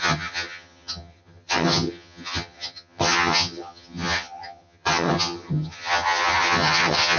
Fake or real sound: fake